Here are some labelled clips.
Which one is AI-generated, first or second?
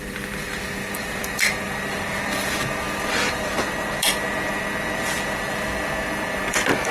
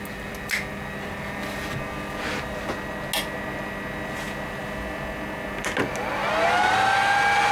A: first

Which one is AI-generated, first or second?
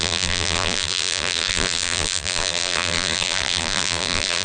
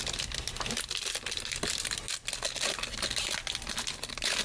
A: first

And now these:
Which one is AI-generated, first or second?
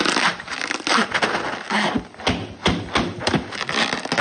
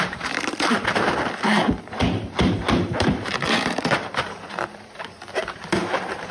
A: second